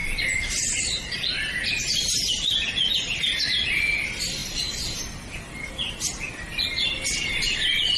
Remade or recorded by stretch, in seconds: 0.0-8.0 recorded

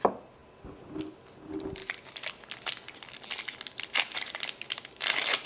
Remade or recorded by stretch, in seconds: 0.0-5.5 recorded